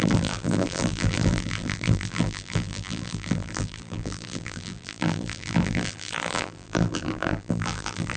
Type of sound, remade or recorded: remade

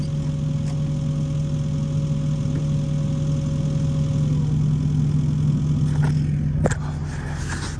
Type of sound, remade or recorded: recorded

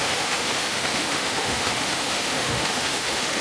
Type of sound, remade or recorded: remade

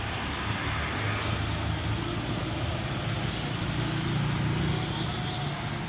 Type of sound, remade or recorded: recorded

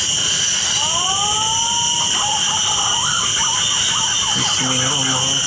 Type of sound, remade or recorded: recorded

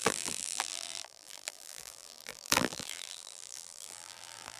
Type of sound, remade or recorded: remade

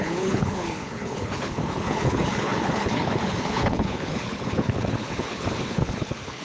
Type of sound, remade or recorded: remade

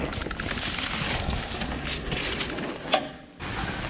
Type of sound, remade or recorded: recorded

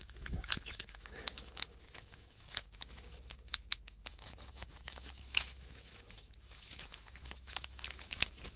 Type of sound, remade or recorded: remade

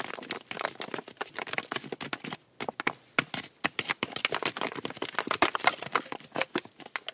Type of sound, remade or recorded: recorded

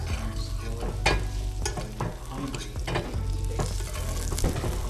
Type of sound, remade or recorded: recorded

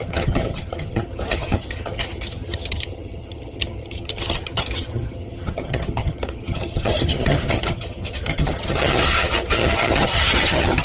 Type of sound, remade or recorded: remade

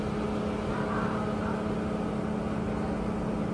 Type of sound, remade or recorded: recorded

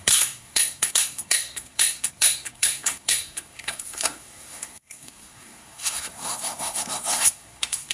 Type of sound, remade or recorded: remade